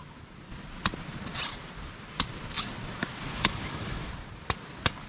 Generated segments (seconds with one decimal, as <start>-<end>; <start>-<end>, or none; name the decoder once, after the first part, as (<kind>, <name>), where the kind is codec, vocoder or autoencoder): 3.3-4.1 (autoencoder, DAC-VAE)